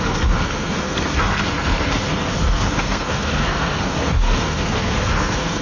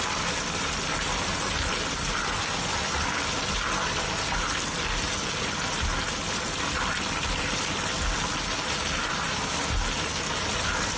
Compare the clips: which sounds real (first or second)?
second